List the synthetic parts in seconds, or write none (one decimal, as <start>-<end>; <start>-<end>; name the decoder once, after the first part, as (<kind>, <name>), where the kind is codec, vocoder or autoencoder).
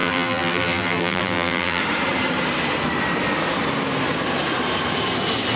0.0-1.8 (vocoder, BigVGAN v2)